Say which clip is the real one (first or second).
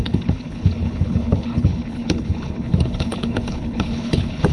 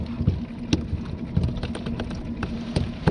second